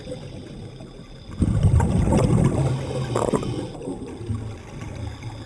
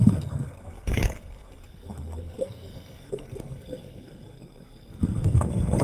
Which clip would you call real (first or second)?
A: first